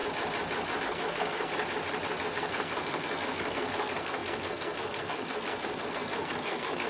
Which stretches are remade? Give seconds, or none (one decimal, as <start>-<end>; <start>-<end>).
0.8-1.5; 2.2-6.9